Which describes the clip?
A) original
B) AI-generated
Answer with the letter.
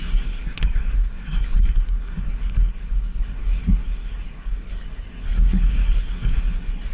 B